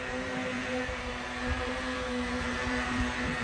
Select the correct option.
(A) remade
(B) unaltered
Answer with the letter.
A